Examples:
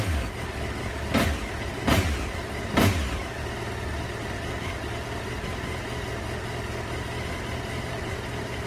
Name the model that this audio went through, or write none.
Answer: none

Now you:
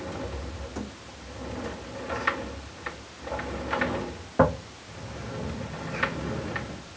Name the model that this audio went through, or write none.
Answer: none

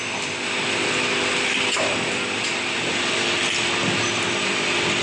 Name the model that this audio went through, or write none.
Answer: none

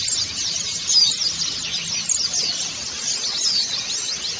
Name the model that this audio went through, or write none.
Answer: none